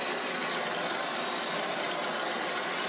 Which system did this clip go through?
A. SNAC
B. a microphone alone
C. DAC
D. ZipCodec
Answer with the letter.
B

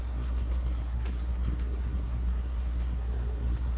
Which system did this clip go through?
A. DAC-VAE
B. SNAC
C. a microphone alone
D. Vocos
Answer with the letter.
B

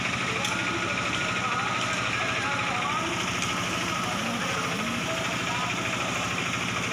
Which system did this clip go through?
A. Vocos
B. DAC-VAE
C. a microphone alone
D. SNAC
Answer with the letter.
C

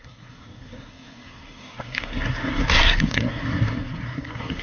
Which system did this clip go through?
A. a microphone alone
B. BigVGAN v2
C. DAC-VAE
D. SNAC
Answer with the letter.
D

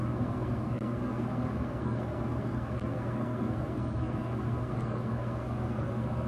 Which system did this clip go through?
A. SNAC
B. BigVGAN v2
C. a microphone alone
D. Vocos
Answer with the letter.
A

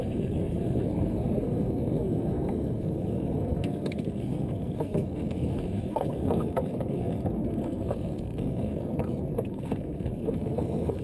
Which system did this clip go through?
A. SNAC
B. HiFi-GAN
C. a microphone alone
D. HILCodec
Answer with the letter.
A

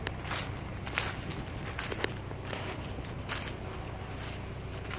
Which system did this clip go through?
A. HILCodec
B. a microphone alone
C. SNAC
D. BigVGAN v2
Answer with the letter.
B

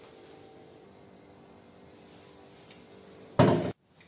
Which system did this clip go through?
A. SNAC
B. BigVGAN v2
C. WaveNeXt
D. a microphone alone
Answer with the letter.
D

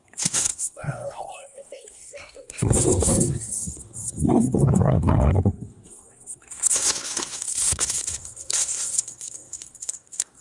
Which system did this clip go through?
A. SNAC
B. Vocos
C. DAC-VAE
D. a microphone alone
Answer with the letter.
A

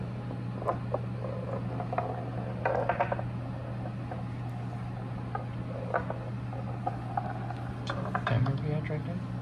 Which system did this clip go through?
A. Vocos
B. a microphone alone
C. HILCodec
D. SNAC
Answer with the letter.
B